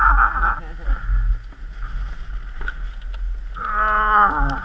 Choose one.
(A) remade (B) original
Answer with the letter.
B